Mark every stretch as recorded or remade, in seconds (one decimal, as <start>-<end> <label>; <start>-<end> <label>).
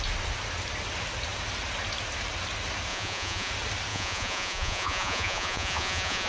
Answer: 0.0-2.9 recorded; 2.9-3.5 remade; 3.5-3.9 recorded; 3.9-6.3 remade